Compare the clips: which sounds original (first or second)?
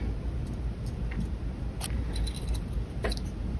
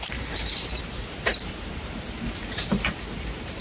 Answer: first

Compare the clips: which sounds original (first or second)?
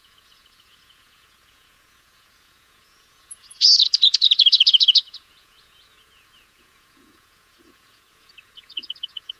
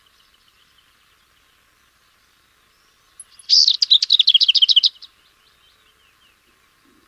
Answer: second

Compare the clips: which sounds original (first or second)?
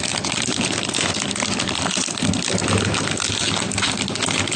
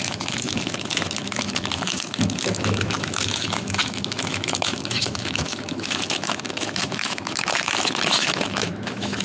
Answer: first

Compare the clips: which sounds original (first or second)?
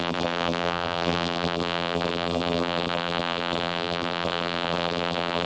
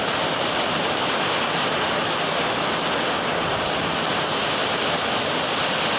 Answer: second